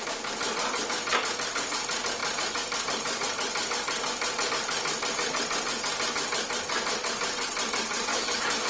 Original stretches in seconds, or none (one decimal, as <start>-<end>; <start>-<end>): 0.0-8.1